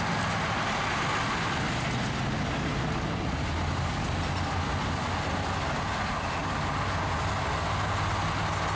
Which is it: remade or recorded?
recorded